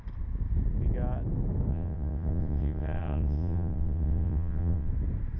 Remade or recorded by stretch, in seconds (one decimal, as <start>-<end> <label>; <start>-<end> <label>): 0.0-1.7 recorded; 1.7-4.9 remade; 4.9-5.4 recorded